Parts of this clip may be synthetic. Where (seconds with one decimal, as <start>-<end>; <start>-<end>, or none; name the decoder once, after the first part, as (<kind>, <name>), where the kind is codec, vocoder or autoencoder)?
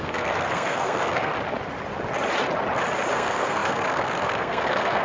0.0-1.3 (codec, SNAC); 3.1-5.0